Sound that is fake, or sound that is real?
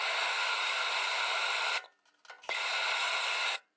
real